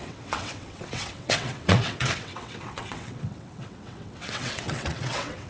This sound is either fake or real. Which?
fake